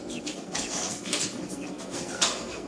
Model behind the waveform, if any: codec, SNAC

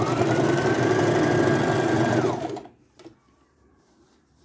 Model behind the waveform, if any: vocoder, BigVGAN v2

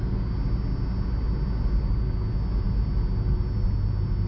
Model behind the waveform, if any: none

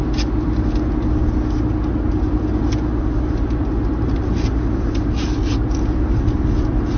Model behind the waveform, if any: none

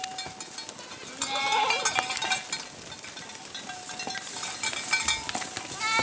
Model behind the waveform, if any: none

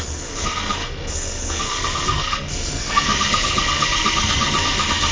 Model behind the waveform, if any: codec, SNAC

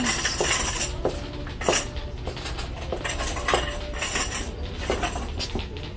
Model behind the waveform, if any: none